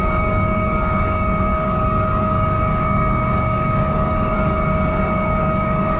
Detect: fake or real fake